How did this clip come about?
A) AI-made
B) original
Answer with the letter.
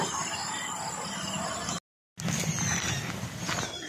B